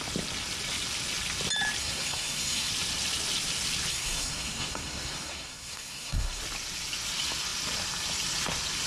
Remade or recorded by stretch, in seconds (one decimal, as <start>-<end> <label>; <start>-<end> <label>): 0.0-1.8 recorded; 1.8-2.7 remade; 2.7-3.9 recorded; 3.9-6.4 remade; 6.4-8.9 recorded